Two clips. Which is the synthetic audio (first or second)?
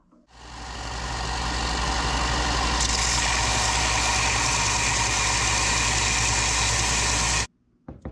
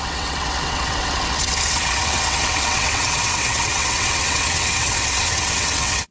second